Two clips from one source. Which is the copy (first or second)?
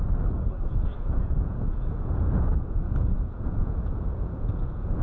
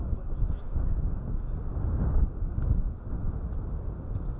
first